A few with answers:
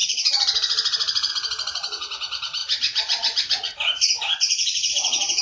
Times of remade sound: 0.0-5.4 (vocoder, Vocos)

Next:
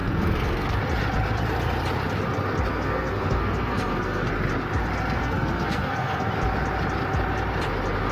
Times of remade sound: 0.0-0.8 (codec, SNAC); 2.7-4.3; 5.2-6.3